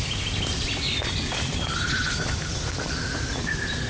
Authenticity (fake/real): real